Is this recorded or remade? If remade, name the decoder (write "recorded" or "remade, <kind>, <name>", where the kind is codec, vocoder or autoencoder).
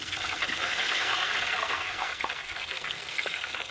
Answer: remade, codec, SNAC